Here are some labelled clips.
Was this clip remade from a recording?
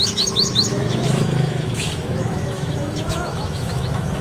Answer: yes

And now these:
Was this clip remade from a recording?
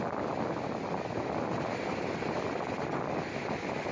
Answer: no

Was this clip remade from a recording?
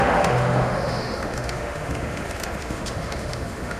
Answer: yes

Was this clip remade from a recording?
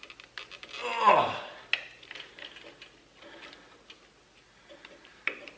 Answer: no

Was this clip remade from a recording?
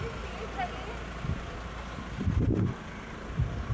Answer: no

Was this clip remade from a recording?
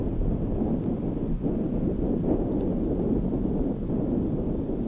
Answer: no